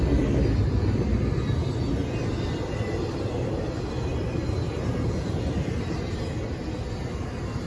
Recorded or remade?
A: recorded